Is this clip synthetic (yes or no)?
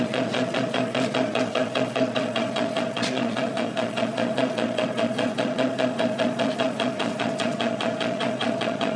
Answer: yes